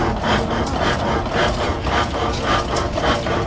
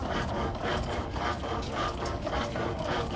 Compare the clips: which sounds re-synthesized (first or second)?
second